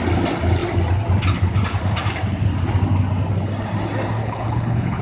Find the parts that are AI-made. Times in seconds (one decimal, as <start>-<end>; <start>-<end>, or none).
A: 4.2-5.0